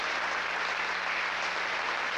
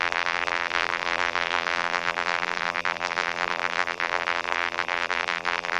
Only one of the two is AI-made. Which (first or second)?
second